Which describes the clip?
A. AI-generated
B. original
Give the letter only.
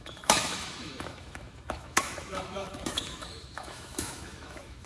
A